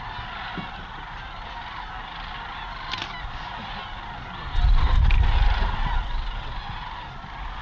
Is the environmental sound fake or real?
real